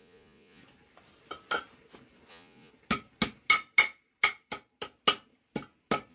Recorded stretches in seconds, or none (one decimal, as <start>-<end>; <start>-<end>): 0.6-2.3; 2.7-6.1